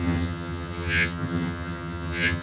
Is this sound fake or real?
fake